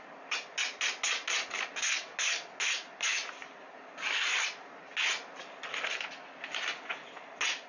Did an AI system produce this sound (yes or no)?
no